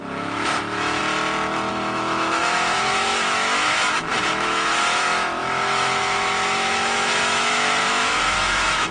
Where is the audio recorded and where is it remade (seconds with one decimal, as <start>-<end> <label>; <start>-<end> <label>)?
0.0-1.0 remade; 1.0-1.7 recorded; 1.7-8.9 remade